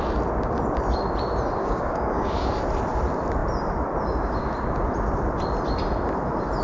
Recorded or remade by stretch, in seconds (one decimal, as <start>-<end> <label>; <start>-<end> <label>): 0.0-1.6 recorded; 1.6-2.5 remade; 2.5-6.6 recorded